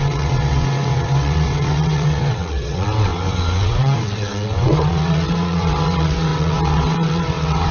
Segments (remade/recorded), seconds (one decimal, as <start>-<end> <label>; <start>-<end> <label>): 0.0-7.7 remade